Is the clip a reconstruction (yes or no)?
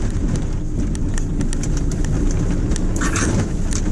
no